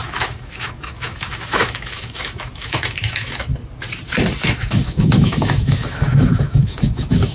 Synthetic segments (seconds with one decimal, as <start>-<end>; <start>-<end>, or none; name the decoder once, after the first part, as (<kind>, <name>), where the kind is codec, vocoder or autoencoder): 0.0-3.5 (autoencoder, DAC-VAE); 4.4-7.3